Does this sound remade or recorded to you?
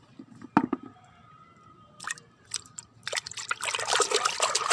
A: recorded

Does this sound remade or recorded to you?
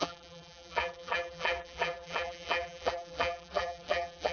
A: remade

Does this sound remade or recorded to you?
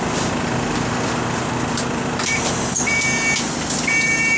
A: recorded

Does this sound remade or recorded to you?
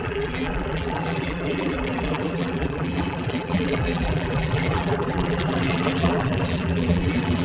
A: remade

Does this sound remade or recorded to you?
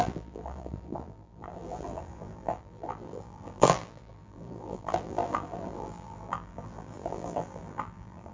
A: remade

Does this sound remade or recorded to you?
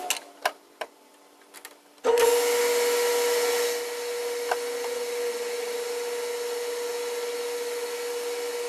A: recorded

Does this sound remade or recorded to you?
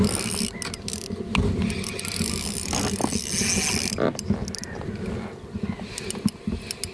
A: recorded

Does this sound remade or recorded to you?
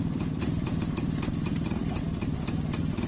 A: remade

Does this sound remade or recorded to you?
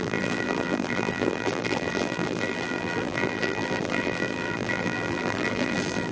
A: remade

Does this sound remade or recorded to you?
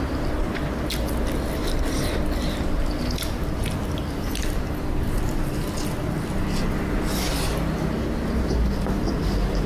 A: recorded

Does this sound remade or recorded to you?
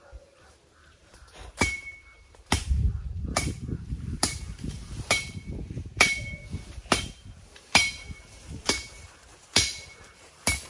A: remade